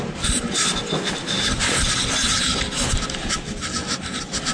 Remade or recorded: recorded